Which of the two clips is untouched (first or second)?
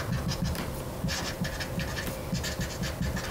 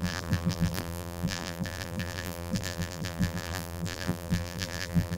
first